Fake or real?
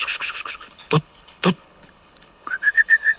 fake